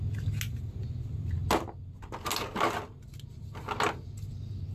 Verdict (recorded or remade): recorded